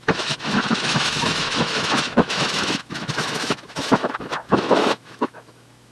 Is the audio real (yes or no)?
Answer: no